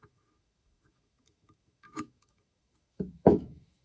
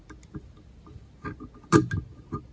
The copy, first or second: first